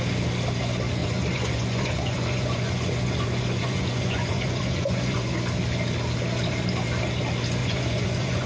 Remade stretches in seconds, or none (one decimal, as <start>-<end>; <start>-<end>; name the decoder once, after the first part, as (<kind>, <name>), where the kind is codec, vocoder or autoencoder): 1.0-5.3 (vocoder, Vocos); 7.6-8.5